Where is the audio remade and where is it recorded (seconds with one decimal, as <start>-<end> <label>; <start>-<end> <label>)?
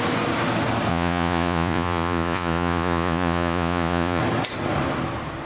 0.0-0.9 recorded; 0.9-4.2 remade; 4.2-5.5 recorded